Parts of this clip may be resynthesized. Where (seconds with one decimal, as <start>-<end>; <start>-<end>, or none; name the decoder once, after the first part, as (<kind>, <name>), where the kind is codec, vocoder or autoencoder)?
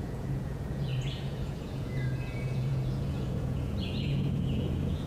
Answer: 0.0-5.1 (vocoder, Vocos)